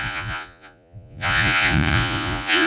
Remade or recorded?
remade